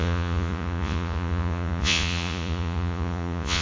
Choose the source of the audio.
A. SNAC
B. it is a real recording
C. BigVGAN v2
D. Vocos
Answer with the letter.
D